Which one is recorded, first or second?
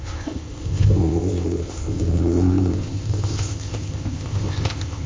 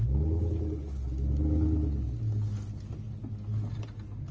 second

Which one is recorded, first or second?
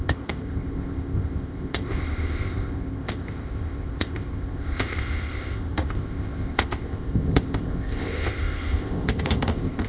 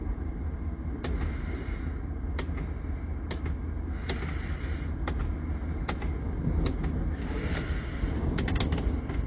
second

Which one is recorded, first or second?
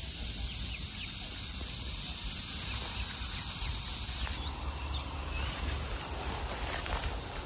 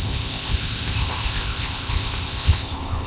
first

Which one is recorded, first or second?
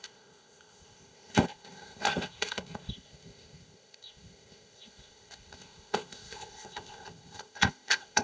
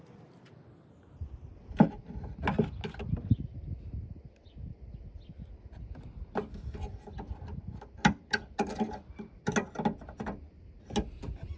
second